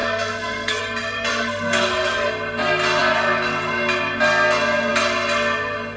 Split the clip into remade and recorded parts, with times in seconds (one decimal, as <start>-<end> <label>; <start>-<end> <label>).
0.0-0.8 remade; 0.8-1.3 recorded; 1.3-2.3 remade; 2.3-6.0 recorded